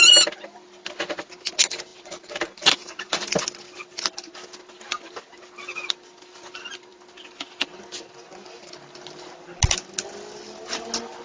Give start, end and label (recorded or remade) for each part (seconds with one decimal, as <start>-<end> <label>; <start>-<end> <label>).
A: 0.0-1.9 recorded; 1.9-3.1 remade; 3.1-11.2 recorded